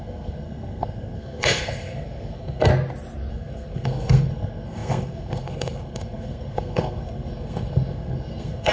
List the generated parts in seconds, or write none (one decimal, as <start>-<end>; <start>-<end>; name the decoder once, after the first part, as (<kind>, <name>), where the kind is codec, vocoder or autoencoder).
0.0-2.7 (codec, SNAC); 3.3-8.7